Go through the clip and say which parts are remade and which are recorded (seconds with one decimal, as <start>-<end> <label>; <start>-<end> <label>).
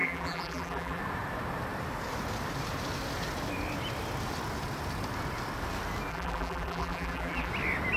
0.0-1.0 remade; 1.0-6.1 recorded; 6.1-7.5 remade; 7.5-8.0 recorded